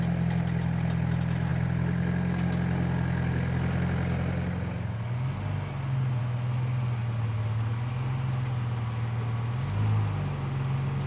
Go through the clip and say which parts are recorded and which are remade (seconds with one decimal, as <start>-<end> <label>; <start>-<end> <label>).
0.0-11.1 recorded